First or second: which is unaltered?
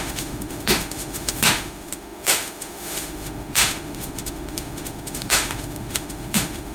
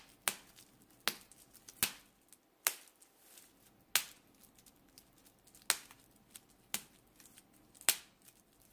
second